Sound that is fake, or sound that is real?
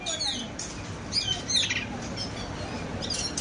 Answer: real